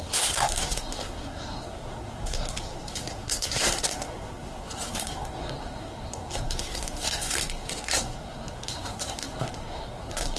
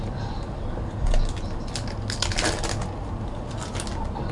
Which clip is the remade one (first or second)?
first